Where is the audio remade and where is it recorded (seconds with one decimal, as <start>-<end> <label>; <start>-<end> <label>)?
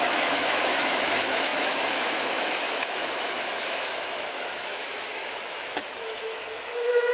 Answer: 0.0-7.1 remade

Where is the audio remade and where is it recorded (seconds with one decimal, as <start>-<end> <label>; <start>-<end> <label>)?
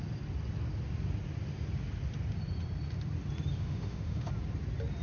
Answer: 0.0-3.5 recorded; 3.5-4.3 remade; 4.3-5.0 recorded